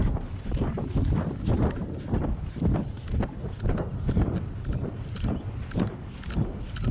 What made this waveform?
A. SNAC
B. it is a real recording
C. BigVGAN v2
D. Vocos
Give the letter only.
B